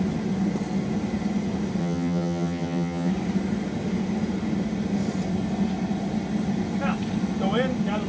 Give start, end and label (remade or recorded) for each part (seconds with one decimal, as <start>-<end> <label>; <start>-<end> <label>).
0.0-1.8 recorded; 1.8-3.1 remade; 3.1-8.1 recorded